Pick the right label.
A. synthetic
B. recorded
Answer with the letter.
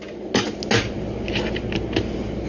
B